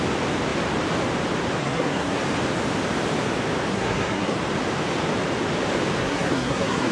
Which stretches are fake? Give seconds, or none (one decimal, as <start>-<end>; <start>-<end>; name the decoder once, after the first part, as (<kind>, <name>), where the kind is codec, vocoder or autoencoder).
1.6-2.2 (codec, SNAC); 3.7-4.4; 6.0-6.9